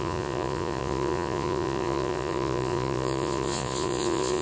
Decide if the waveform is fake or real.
fake